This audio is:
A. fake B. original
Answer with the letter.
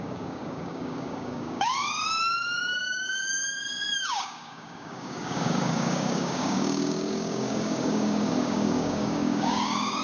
A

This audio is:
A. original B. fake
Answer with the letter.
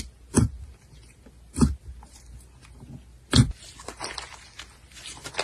A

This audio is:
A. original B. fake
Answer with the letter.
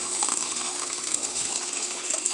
B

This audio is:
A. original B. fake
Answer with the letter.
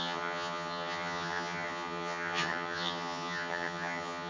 B